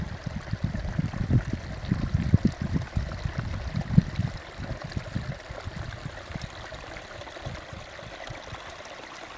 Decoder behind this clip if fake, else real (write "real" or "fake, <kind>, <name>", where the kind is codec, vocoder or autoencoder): real